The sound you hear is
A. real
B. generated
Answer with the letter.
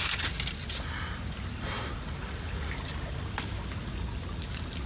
A